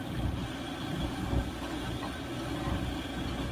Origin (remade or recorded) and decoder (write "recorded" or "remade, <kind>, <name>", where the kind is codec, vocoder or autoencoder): recorded